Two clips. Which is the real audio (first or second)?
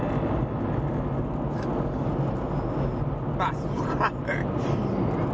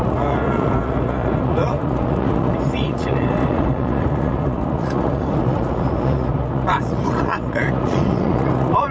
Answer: first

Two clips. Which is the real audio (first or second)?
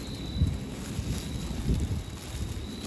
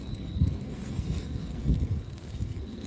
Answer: first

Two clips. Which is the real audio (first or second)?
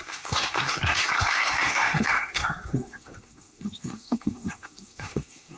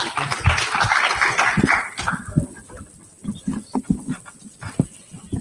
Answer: second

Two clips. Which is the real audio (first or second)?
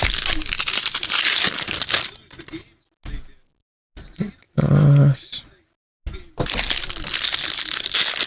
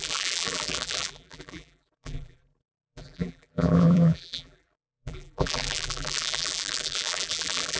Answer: first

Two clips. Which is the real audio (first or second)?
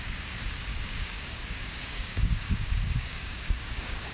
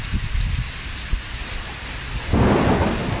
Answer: second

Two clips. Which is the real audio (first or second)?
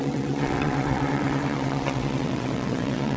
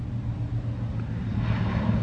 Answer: second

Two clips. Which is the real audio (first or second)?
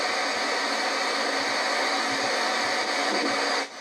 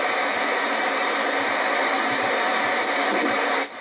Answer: first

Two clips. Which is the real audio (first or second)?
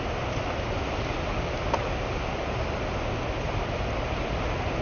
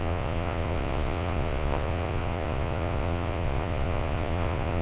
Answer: first